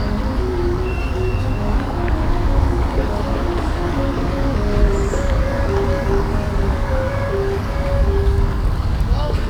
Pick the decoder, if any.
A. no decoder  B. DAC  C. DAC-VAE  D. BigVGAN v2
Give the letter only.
B